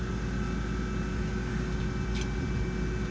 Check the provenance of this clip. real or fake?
real